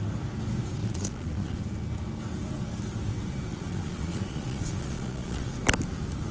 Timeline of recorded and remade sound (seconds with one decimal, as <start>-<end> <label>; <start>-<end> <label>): 0.0-0.8 recorded; 0.8-1.6 remade; 1.6-3.5 recorded; 3.5-5.5 remade; 5.5-6.3 recorded